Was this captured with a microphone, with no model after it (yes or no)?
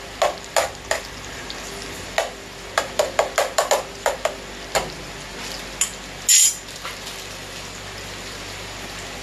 yes